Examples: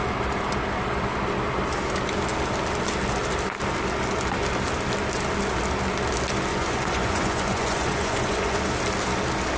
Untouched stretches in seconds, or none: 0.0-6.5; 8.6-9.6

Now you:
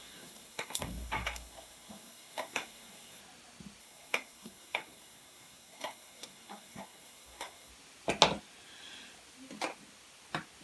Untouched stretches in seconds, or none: 3.2-3.8; 7.7-10.6

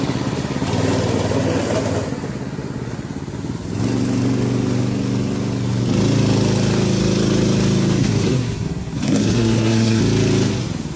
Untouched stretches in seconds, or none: 0.0-8.0; 10.0-11.0

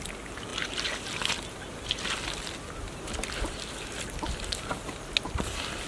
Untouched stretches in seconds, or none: 0.0-5.9

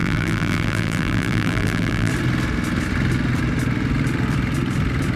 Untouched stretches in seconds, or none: 2.1-5.2

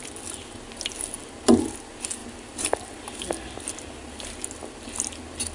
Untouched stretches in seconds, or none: 0.0-5.5